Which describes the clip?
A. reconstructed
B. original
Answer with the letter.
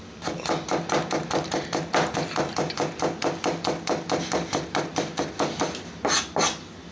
B